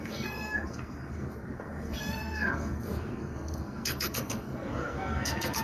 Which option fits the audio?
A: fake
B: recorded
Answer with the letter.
A